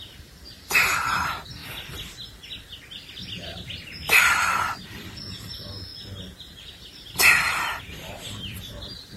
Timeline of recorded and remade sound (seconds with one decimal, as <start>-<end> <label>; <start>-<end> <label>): 0.0-1.6 remade; 1.6-4.2 recorded; 4.2-5.9 remade; 5.9-7.7 recorded; 7.7-9.2 remade